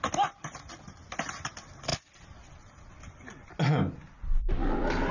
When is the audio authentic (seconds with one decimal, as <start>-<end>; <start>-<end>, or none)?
0.0-5.1